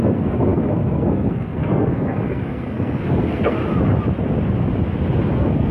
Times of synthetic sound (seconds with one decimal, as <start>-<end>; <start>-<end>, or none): 0.0-3.6; 5.3-5.7